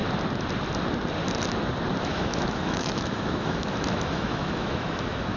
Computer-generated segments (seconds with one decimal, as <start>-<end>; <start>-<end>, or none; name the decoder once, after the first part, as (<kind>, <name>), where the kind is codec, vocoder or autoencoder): 2.0-5.4 (autoencoder, DAC-VAE)